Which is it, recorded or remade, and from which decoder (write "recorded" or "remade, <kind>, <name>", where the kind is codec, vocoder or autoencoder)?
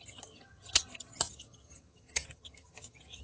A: remade, vocoder, HiFi-GAN